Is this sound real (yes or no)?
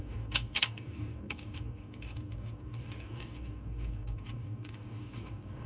no